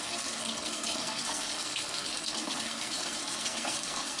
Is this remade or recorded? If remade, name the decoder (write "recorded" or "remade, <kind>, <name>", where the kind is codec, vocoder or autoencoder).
remade, codec, SNAC